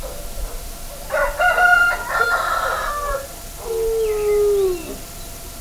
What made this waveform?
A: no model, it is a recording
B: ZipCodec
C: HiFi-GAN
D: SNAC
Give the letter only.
A